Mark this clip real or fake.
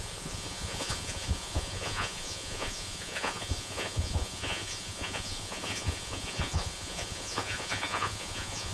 fake